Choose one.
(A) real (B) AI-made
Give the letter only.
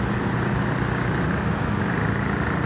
A